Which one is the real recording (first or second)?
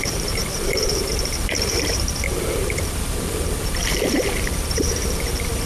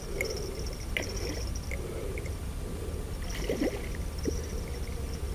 second